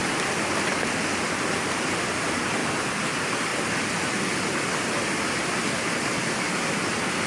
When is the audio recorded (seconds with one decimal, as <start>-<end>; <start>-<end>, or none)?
0.0-7.3